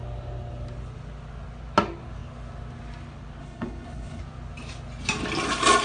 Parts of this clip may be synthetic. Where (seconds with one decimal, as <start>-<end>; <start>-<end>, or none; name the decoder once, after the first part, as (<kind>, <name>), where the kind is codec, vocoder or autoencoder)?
3.4-4.2 (codec, HILCodec)